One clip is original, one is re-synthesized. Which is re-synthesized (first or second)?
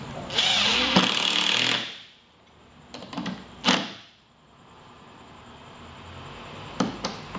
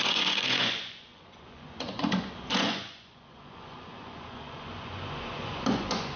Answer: second